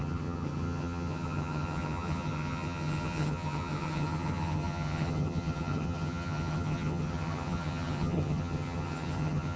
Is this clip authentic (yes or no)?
no